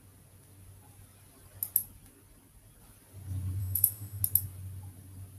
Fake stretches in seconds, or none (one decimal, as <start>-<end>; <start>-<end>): 3.6-4.2